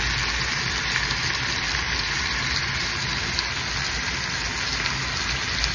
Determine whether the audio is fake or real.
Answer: real